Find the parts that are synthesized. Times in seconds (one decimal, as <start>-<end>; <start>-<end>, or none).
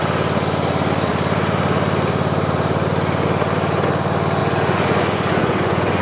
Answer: 4.4-6.0